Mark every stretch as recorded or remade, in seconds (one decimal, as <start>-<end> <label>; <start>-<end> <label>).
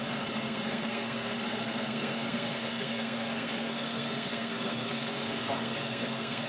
0.0-6.5 remade